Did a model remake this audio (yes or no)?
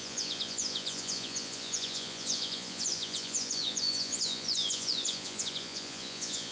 yes